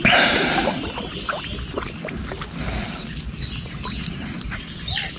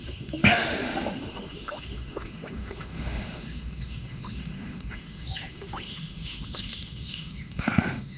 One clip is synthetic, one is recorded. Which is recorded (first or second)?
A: first